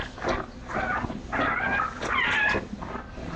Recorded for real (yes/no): yes